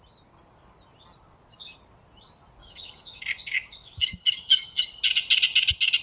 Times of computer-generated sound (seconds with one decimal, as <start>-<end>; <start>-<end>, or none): 2.6-3.2; 3.8-4.8